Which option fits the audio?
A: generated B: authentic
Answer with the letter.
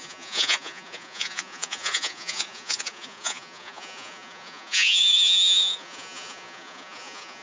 A